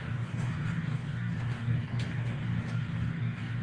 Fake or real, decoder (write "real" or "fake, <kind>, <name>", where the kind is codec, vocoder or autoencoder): fake, codec, DAC